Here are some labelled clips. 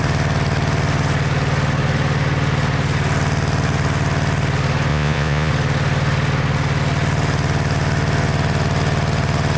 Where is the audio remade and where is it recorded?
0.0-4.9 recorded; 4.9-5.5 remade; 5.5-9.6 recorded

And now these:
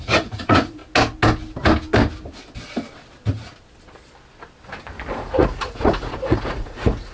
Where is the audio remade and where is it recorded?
0.0-0.8 remade; 0.8-5.1 recorded; 5.1-7.1 remade